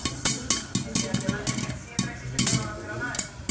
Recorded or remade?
recorded